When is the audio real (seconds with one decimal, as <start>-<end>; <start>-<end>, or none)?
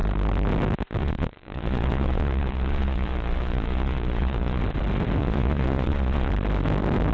0.0-1.0; 4.6-5.2; 6.3-7.1